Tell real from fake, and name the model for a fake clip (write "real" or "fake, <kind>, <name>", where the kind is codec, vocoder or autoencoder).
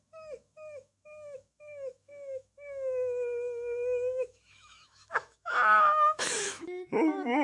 fake, autoencoder, DAC-VAE